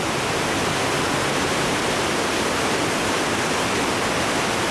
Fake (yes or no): no